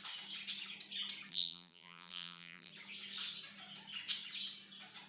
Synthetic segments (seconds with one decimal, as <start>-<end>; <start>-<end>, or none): 1.3-2.7